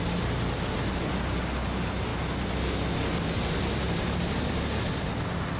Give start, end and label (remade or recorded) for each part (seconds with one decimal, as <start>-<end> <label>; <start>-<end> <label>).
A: 0.0-5.6 recorded